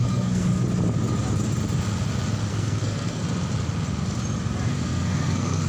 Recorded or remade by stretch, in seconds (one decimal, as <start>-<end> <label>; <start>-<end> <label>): 0.0-0.5 remade; 0.5-2.5 recorded; 2.5-3.2 remade; 3.2-4.7 recorded; 4.7-5.7 remade